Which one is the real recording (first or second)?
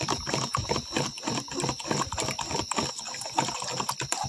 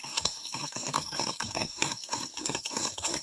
first